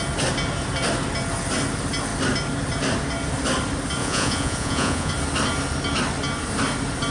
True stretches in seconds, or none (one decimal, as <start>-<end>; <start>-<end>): 0.0-4.0; 5.1-7.1